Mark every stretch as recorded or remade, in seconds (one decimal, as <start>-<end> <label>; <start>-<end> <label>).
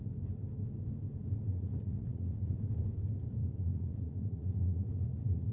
0.0-1.5 recorded; 1.5-2.6 remade; 2.6-3.4 recorded; 3.4-5.5 remade